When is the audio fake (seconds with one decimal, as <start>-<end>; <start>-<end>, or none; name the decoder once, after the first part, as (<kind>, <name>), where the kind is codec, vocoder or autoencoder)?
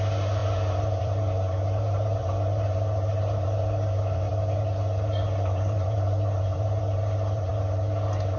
0.0-8.4 (vocoder, BigVGAN v2)